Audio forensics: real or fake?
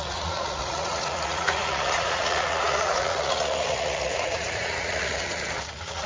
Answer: fake